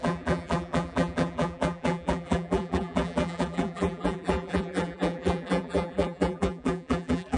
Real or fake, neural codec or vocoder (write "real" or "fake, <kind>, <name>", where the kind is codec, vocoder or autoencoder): fake, vocoder, BigVGAN v2